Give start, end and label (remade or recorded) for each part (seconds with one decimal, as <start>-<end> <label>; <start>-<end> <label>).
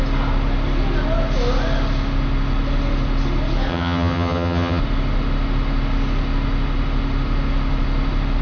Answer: 0.0-3.7 recorded; 3.7-4.8 remade; 4.8-8.4 recorded